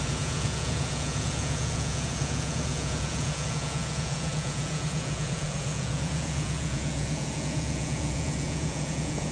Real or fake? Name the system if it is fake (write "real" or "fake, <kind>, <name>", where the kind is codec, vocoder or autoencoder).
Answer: fake, vocoder, Vocos